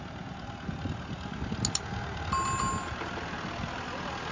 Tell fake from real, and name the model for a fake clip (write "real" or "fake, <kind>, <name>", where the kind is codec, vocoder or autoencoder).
real